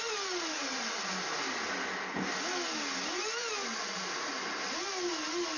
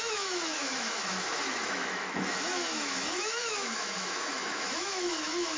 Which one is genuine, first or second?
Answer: first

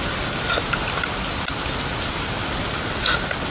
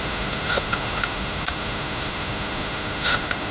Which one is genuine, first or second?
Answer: first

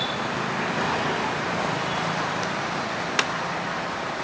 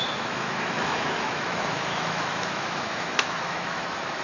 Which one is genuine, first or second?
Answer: first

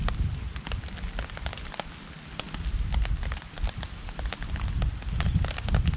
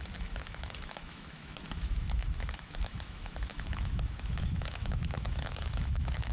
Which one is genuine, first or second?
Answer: first